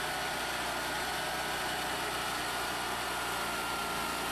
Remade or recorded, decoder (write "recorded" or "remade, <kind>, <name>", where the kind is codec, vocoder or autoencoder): recorded